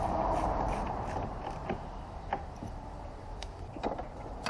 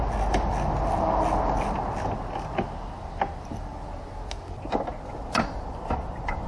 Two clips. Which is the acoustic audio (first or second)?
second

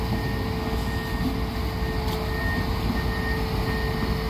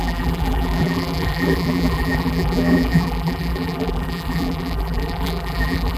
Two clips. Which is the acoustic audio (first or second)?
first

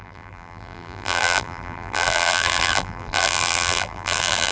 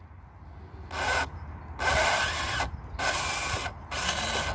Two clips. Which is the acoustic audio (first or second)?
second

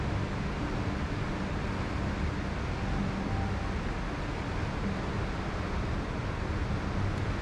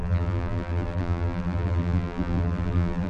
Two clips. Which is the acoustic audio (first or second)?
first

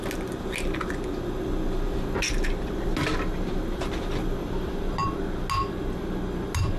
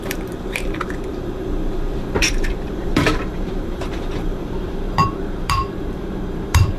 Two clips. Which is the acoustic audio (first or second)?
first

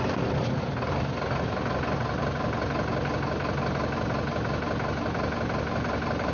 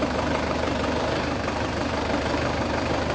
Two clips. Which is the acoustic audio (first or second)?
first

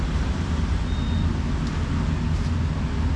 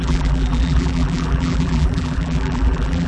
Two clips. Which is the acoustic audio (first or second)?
first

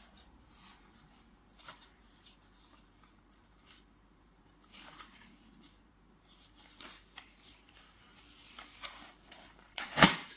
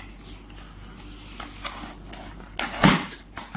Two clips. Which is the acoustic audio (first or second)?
second